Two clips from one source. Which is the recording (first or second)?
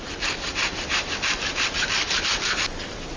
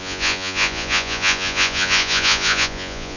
first